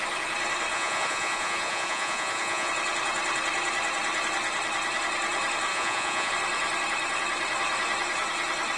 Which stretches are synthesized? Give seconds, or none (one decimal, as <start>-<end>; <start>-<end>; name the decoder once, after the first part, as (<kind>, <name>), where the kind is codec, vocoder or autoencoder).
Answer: 0.7-2.7 (vocoder, Vocos); 5.7-6.3